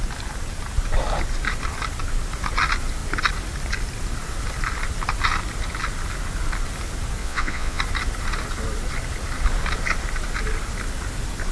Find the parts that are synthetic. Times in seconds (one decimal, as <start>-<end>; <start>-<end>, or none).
7.2-7.8